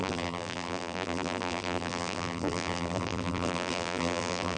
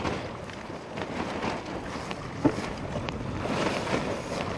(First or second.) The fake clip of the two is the first